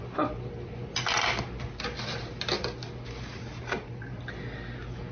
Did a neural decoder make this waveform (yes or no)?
no